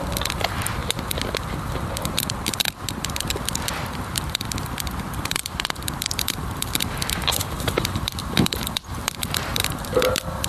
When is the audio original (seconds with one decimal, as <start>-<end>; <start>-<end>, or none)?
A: 0.8-3.4